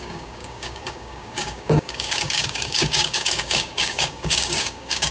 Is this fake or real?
fake